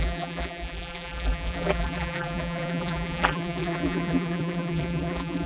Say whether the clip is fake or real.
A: fake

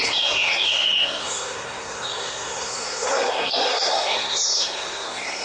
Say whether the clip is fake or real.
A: fake